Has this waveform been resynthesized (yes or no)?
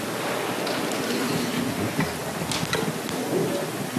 no